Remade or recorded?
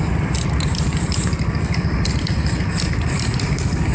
recorded